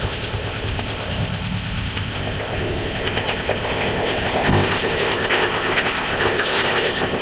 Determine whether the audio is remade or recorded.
remade